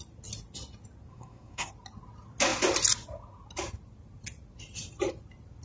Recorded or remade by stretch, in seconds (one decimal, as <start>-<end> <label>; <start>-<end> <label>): 0.0-1.1 recorded; 1.1-1.7 remade; 1.7-5.6 recorded